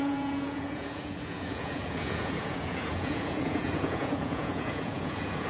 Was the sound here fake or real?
fake